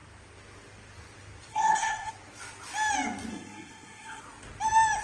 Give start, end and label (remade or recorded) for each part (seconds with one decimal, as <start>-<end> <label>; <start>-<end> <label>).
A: 0.0-1.5 recorded; 1.5-2.1 remade; 2.1-3.3 recorded; 3.3-4.2 remade; 4.2-5.0 recorded